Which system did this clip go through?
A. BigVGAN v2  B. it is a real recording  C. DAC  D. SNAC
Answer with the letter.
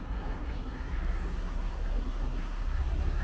D